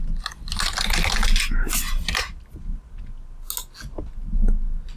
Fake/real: real